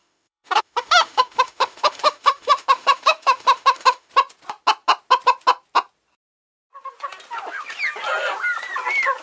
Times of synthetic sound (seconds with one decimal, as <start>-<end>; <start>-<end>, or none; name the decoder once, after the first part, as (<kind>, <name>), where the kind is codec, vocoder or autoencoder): 0.0-4.1 (autoencoder, DAC-VAE)